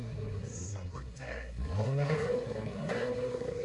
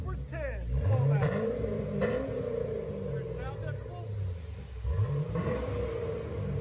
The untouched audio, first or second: second